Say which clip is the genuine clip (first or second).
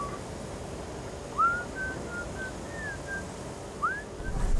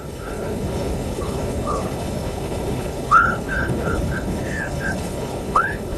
first